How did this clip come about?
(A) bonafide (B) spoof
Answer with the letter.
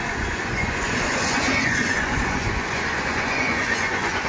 B